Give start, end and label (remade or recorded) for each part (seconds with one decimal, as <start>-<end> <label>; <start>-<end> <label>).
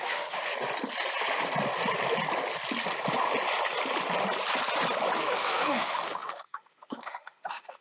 0.0-0.5 remade; 0.5-5.2 recorded; 5.2-7.8 remade